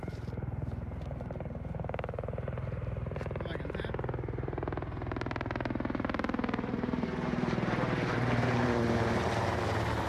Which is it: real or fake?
fake